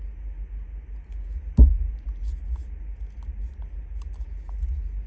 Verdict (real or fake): real